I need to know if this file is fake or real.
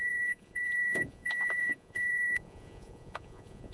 fake